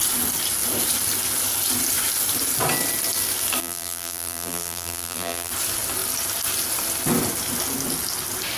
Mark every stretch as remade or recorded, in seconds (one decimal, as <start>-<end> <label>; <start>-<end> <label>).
0.0-3.6 recorded; 3.6-5.5 remade; 5.5-8.6 recorded